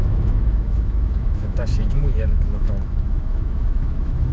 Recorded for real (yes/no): no